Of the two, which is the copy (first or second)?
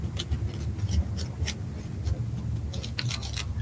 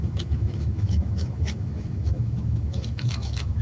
second